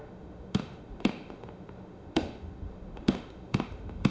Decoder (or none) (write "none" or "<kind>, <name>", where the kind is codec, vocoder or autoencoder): autoencoder, DAC-VAE